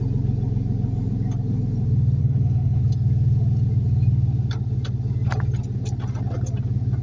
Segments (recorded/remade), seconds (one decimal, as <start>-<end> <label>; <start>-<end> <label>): 0.0-2.2 recorded; 2.2-2.8 remade; 2.8-7.0 recorded